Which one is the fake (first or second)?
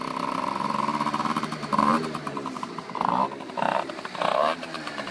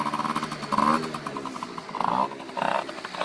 first